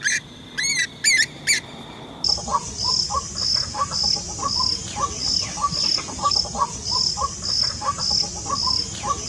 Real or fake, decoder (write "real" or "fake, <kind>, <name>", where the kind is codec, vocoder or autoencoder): real